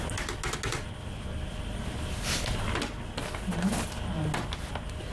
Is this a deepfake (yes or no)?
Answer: no